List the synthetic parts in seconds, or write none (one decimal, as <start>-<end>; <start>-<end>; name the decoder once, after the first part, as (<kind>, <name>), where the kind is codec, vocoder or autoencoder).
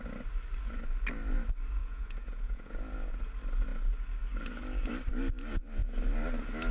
1.8-3.2 (vocoder, Vocos)